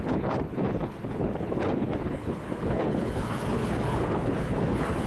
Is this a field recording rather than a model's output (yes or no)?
no